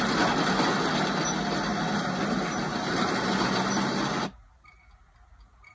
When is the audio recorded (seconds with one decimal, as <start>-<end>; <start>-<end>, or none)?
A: 0.0-5.7